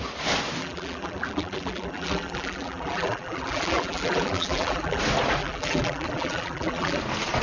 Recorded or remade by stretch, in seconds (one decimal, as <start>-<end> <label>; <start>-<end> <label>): 0.0-0.6 recorded; 0.6-5.0 remade; 5.0-5.4 recorded; 5.4-7.0 remade; 7.0-7.4 recorded